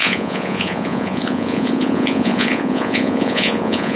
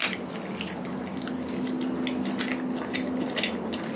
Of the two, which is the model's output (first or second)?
first